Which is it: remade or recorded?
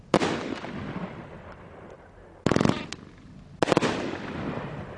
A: recorded